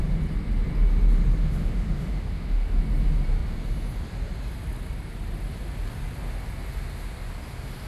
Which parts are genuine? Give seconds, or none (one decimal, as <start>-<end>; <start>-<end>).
0.0-1.4; 2.8-7.9